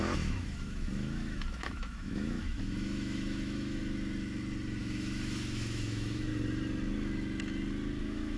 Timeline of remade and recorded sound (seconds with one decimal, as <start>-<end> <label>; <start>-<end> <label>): 0.0-3.8 remade; 3.8-4.8 recorded; 4.8-6.3 remade; 6.3-8.0 recorded; 8.0-8.4 remade